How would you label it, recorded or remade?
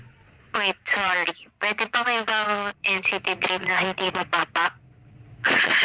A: remade